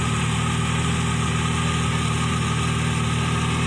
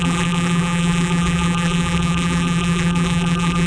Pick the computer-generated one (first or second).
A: second